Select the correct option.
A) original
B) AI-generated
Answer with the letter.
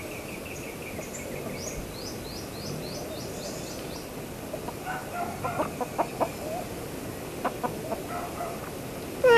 A